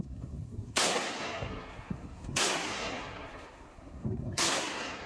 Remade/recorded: remade